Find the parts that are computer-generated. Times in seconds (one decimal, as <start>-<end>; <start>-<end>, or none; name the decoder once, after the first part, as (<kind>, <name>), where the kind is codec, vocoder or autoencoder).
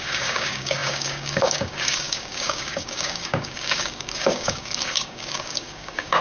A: 0.0-6.2 (codec, DAC)